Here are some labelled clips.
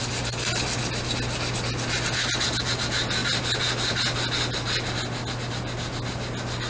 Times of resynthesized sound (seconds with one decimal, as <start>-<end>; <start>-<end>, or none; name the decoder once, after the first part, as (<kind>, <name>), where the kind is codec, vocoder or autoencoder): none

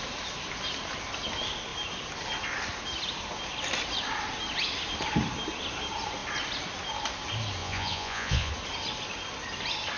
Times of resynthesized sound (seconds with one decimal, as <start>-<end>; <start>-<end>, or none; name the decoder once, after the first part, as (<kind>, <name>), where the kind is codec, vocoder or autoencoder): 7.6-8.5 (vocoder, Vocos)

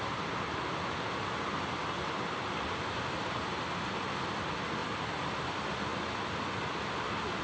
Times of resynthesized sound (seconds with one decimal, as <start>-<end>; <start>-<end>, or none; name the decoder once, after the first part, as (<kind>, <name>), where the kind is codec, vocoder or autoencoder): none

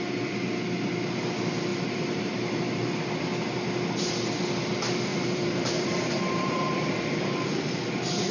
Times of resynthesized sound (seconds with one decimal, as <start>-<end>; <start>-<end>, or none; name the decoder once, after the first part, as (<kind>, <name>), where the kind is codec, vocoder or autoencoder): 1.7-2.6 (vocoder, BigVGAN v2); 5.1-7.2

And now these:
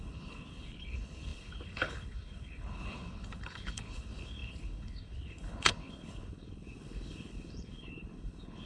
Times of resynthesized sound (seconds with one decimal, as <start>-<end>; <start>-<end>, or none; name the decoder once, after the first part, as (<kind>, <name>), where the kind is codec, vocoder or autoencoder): 0.0-8.7 (codec, HILCodec)

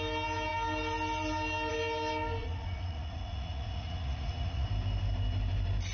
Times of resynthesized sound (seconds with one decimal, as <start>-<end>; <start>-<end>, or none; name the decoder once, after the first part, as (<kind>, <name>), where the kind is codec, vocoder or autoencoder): 2.4-4.7 (vocoder, Vocos)